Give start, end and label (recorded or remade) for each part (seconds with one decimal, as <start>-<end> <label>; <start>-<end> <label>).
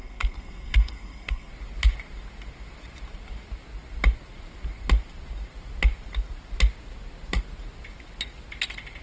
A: 0.0-1.5 remade; 1.5-9.0 recorded